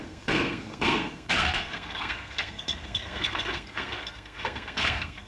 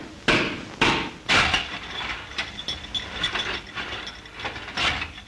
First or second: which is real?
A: second